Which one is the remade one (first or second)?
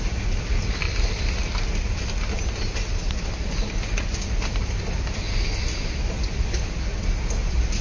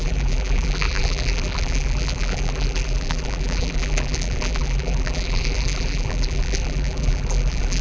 second